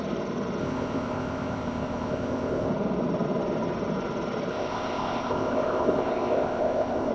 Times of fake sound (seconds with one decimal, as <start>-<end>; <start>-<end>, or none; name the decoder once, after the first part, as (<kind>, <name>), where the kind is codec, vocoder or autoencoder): 0.6-2.7 (codec, ZipCodec); 4.5-7.1